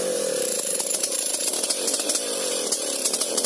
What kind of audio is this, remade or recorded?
remade